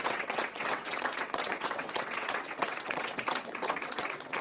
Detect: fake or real fake